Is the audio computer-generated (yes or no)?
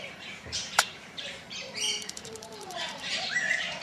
yes